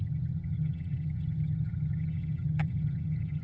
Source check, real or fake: fake